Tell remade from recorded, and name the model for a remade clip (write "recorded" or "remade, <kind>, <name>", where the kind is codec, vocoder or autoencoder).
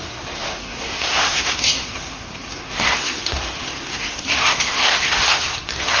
remade, codec, SNAC